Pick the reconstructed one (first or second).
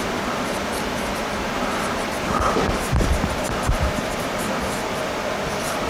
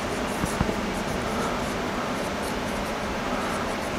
first